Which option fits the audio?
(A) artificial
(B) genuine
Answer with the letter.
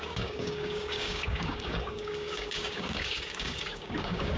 A